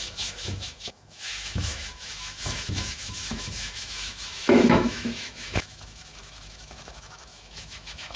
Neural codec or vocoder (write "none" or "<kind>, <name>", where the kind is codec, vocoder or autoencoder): autoencoder, DAC-VAE